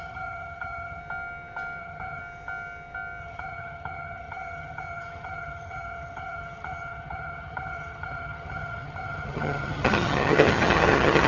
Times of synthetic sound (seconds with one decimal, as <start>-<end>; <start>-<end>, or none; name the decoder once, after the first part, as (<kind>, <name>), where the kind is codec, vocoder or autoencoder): 0.0-1.0 (vocoder, HiFi-GAN); 1.8-2.2; 3.2-11.3